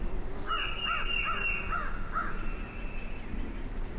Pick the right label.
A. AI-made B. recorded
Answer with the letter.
B